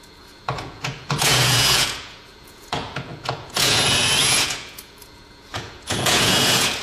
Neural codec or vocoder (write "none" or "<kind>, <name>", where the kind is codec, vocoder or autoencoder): vocoder, Vocos